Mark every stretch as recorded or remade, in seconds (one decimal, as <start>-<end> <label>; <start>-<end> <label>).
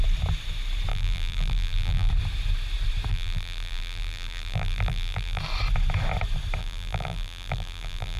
0.0-0.9 recorded; 0.9-2.1 remade; 2.1-3.1 recorded; 3.1-5.4 remade; 5.4-6.6 recorded; 6.6-8.2 remade